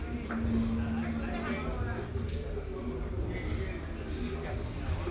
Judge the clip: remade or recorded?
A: recorded